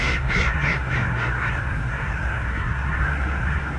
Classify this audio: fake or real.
fake